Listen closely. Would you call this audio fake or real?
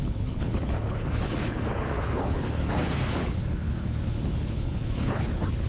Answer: fake